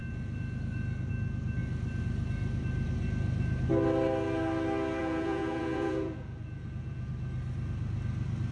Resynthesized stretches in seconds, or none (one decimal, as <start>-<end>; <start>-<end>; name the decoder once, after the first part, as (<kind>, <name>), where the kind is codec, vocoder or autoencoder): 5.0-7.1 (vocoder, Vocos)